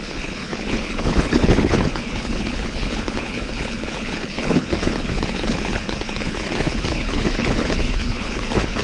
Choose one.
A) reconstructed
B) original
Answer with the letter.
A